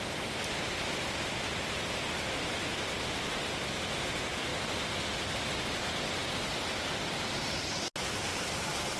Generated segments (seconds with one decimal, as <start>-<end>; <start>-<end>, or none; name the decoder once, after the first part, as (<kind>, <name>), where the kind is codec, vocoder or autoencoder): none